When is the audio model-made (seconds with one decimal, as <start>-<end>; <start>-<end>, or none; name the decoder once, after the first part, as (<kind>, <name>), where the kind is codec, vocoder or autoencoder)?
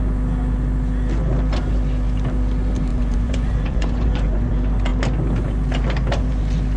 2.9-4.5 (vocoder, Vocos)